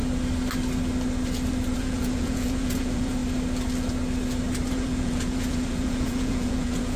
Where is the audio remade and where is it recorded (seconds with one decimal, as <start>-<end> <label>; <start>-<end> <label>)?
0.0-1.7 recorded; 1.7-3.2 remade; 3.2-4.7 recorded; 4.7-7.0 remade